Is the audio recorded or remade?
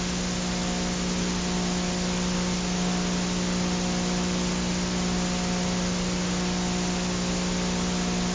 recorded